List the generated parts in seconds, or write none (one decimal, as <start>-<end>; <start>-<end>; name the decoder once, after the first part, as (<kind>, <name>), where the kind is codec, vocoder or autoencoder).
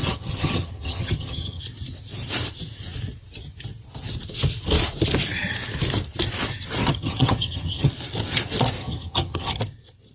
0.0-1.6 (vocoder, HiFi-GAN); 6.8-7.9; 8.8-9.6